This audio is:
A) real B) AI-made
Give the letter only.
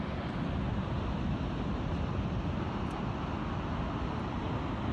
A